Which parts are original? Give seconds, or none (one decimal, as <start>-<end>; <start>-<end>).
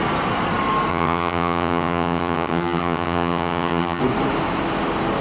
0.0-0.9; 4.0-5.2